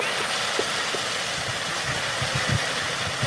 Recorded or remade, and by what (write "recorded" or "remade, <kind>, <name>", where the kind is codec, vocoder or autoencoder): recorded